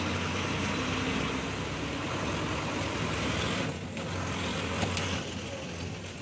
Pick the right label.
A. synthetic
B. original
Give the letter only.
B